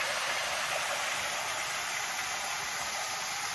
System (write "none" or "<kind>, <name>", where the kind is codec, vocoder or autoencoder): none